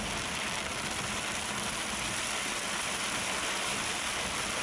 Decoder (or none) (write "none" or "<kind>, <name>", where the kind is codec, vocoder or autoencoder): vocoder, BigVGAN v2